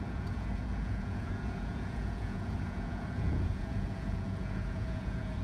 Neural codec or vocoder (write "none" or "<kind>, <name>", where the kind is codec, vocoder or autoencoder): vocoder, Vocos